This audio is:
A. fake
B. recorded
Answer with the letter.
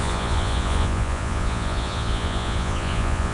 A